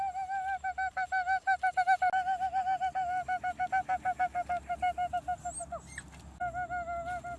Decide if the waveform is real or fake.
real